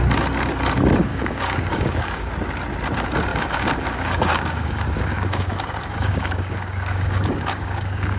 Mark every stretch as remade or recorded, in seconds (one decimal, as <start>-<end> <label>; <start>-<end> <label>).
0.0-1.1 recorded; 1.1-2.3 remade; 2.3-3.3 recorded; 3.3-8.2 remade

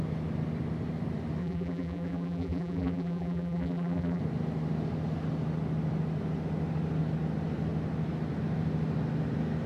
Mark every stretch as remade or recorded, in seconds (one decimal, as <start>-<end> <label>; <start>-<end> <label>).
0.0-1.4 recorded; 1.4-4.2 remade; 4.2-9.7 recorded